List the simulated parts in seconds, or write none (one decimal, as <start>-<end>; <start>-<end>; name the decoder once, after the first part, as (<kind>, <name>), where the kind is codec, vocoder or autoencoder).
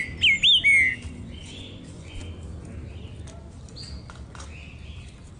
0.9-2.2 (vocoder, Vocos)